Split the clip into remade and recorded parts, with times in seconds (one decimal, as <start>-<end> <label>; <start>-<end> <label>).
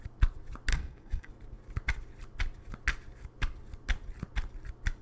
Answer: 0.0-0.7 recorded; 0.7-1.3 remade; 1.3-5.0 recorded